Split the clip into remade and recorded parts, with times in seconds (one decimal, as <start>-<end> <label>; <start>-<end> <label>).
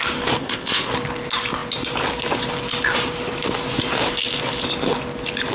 0.0-0.4 recorded; 0.4-0.9 remade; 0.9-5.5 recorded